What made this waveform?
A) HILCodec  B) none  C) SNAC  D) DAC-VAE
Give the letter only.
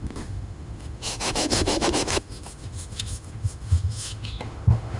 D